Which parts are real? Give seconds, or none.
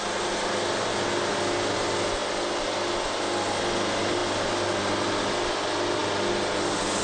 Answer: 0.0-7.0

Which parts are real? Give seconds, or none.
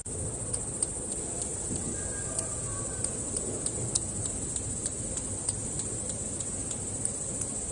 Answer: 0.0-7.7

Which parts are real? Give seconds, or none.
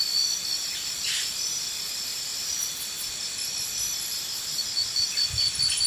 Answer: 0.0-5.9